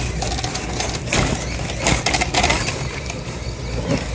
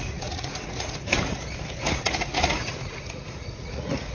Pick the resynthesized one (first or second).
second